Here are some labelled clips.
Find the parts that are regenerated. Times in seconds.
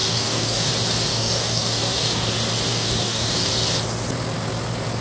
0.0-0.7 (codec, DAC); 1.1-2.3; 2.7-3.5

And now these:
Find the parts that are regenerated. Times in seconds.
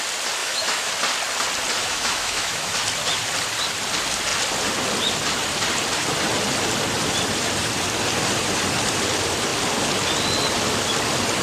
0.4-0.9 (autoencoder, DAC-VAE); 1.8-2.7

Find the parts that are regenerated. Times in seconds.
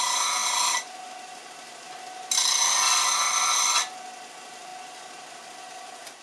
none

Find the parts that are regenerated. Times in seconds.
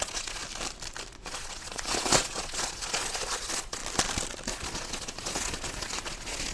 0.0-0.4 (vocoder, Vocos); 1.2-3.8; 4.5-6.5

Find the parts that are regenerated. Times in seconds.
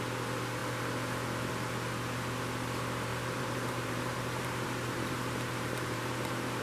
3.1-6.6 (vocoder, BigVGAN v2)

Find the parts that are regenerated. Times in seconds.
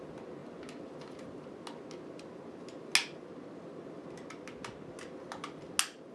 none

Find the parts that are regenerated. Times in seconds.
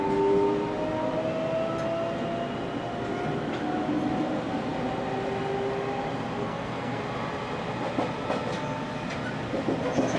6.4-7.0 (codec, SNAC)